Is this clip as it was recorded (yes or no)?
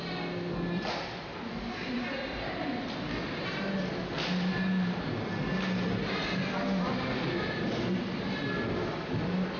yes